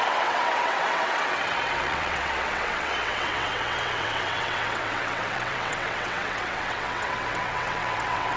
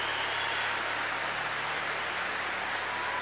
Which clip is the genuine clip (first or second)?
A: second